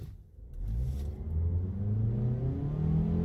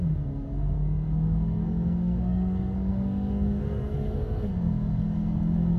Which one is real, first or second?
first